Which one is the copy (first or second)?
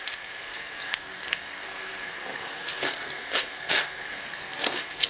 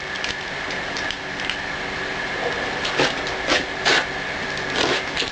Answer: first